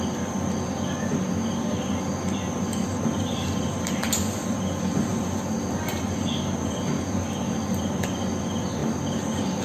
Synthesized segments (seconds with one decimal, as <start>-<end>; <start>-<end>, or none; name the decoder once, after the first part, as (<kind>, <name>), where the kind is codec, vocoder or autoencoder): none